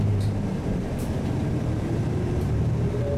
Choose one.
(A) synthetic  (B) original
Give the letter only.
A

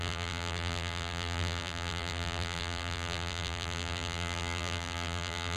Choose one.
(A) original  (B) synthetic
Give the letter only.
B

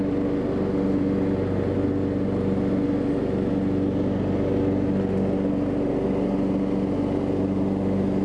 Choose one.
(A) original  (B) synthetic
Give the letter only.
A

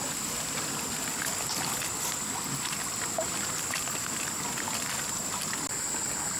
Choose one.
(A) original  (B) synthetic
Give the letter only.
A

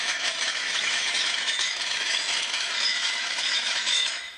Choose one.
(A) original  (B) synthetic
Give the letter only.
B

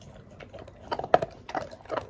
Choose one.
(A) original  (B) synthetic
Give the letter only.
A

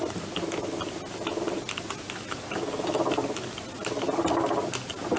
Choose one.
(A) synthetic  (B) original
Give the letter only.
B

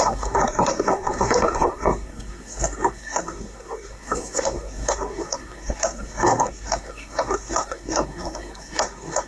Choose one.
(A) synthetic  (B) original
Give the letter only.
A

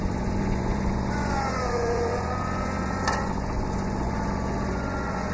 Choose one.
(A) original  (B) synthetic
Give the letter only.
B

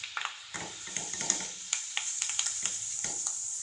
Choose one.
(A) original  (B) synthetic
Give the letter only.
A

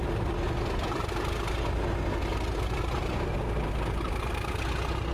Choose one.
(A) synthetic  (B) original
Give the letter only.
B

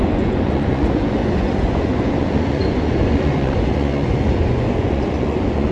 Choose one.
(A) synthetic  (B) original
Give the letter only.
A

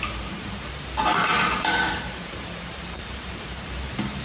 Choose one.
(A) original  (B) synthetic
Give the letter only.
B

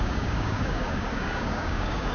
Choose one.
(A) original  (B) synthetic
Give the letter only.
B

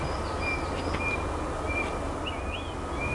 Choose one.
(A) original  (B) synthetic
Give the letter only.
A